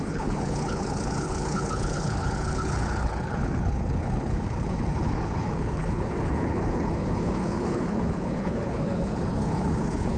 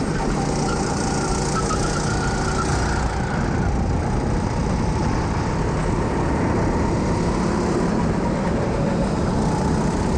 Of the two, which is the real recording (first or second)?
second